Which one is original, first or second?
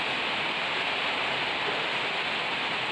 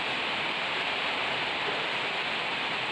first